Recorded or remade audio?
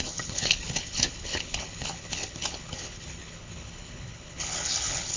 remade